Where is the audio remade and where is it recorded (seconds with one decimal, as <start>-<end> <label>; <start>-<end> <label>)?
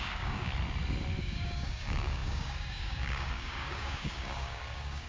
0.0-0.5 remade; 0.5-1.2 recorded; 1.2-5.1 remade